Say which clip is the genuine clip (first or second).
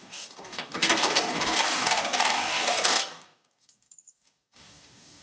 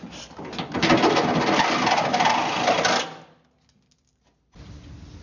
second